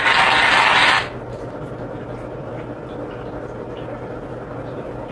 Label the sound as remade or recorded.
recorded